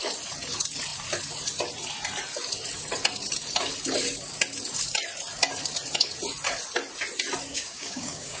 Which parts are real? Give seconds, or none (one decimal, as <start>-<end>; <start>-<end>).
0.0-7.5